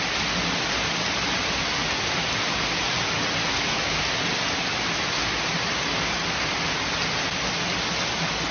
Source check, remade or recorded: recorded